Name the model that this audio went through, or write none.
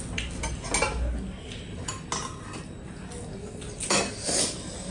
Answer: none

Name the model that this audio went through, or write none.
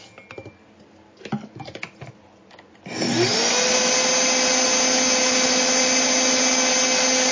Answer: none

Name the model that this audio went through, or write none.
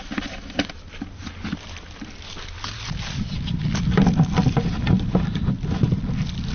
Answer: none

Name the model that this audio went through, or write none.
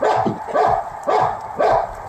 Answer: none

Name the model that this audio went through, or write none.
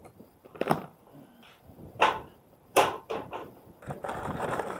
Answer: vocoder, BigVGAN v2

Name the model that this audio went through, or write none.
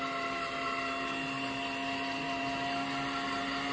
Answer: none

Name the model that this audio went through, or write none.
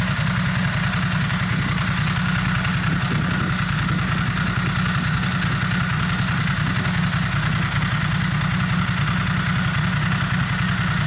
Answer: none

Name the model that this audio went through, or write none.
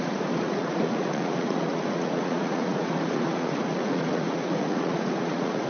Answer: vocoder, Vocos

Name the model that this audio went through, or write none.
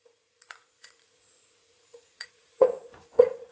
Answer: vocoder, Vocos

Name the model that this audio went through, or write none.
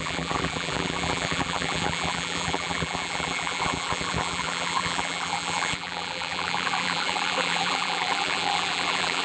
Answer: vocoder, BigVGAN v2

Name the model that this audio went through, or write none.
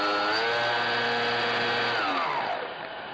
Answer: none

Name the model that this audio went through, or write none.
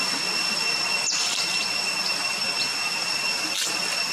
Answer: none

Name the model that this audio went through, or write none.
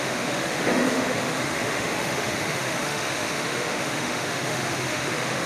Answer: autoencoder, DAC-VAE